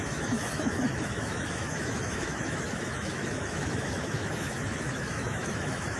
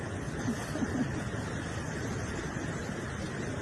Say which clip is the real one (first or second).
second